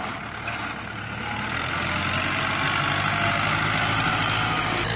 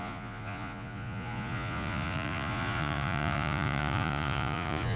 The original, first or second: first